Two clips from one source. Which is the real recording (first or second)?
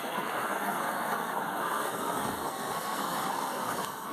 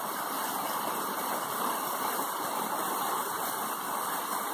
second